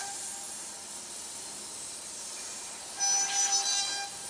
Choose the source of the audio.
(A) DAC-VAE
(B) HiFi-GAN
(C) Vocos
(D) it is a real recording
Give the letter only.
D